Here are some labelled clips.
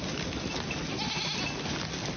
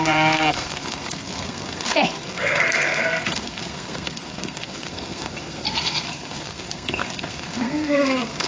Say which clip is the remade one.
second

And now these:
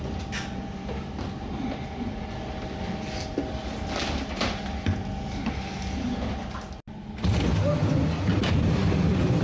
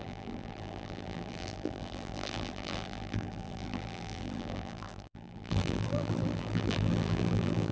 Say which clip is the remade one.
second